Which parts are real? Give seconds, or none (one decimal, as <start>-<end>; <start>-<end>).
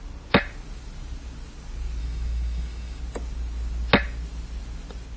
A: 0.0-2.0; 3.0-5.2